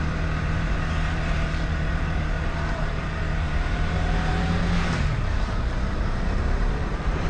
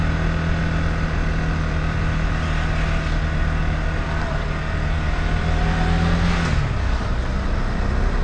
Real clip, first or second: second